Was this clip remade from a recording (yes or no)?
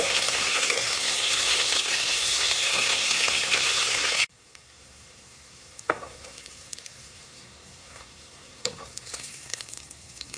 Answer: yes